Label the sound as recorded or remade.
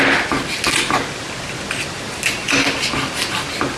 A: recorded